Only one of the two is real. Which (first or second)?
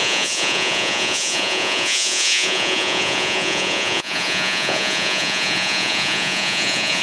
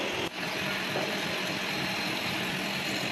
second